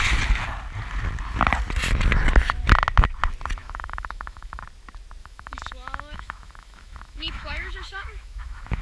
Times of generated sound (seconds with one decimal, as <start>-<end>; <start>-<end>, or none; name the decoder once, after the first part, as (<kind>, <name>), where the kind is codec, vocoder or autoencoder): 3.6-4.6 (autoencoder, DAC-VAE); 5.2-8.8